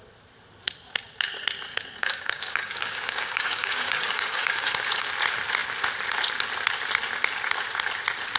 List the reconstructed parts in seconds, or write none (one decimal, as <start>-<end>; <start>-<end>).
1.7-5.1